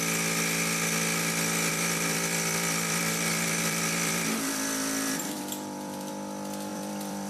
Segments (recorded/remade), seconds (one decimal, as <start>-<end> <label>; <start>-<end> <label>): 0.0-1.7 recorded; 1.7-6.1 remade; 6.1-6.7 recorded; 6.7-7.3 remade